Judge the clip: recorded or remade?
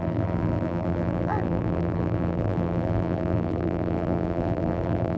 remade